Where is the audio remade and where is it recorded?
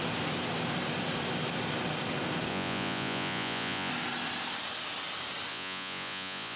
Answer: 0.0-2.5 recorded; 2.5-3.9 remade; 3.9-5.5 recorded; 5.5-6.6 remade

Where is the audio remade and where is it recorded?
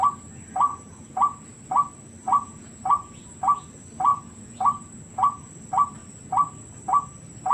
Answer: 0.0-0.7 recorded; 0.7-1.6 remade; 1.6-2.2 recorded; 2.2-3.6 remade; 3.6-4.1 recorded; 4.1-5.5 remade; 5.5-7.5 recorded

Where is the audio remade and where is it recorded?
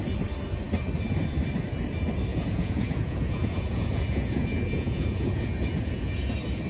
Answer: 0.0-2.3 recorded; 2.3-6.3 remade; 6.3-6.7 recorded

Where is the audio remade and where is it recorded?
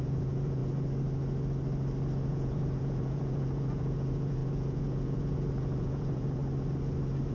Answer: 0.0-0.6 remade; 0.6-2.3 recorded; 2.3-6.4 remade; 6.4-7.3 recorded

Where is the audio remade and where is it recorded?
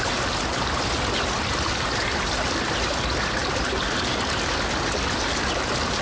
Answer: 0.0-6.0 recorded